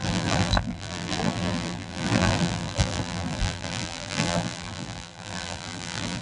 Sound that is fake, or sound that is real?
fake